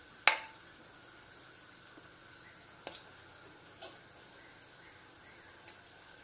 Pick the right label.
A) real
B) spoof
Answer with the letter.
A